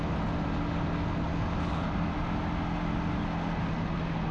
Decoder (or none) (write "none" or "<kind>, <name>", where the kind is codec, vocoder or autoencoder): none